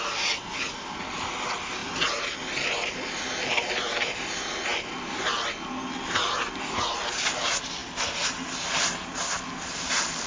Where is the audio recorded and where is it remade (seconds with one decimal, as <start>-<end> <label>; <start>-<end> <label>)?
0.0-10.3 recorded